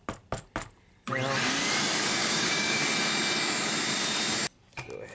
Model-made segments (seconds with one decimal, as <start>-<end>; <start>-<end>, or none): 2.2-2.8